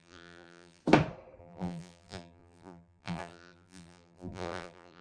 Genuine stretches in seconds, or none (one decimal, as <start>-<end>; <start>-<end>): 0.8-1.4